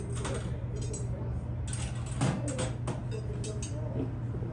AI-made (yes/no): no